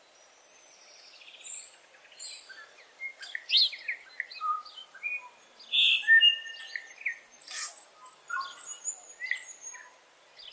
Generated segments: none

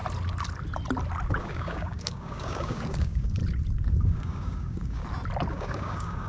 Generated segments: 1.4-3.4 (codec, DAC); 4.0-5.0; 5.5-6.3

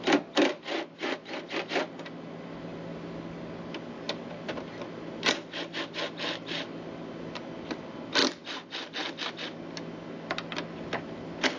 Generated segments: none

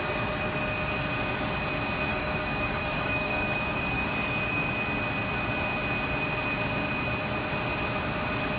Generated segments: 2.1-4.7 (codec, DAC)

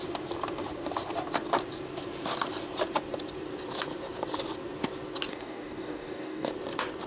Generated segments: 5.3-6.5 (codec, DAC)

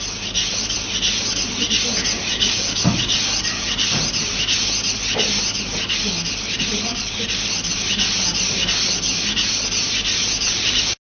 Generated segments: 2.3-2.8 (codec, DAC)

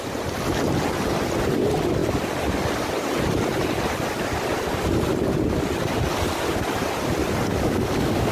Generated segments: 7.5-8.3 (codec, DAC)